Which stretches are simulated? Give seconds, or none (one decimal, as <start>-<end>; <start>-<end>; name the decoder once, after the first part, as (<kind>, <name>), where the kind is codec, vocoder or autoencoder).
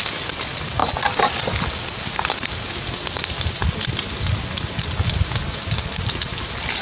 none